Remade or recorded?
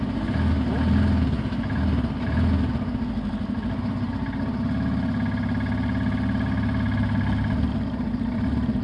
recorded